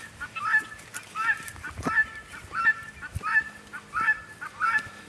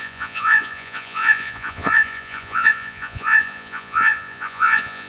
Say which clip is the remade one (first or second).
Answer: second